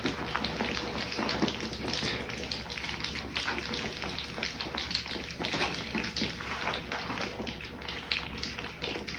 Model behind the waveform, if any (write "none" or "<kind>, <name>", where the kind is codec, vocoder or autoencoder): none